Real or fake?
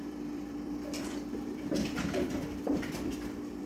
fake